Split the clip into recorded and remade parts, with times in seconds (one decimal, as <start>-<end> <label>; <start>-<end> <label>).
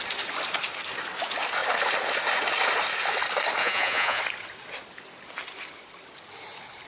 0.0-3.6 recorded; 3.6-4.2 remade; 4.2-6.9 recorded